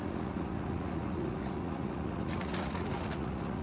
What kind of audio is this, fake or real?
fake